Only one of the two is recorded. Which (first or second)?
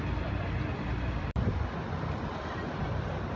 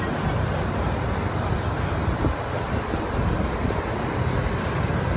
second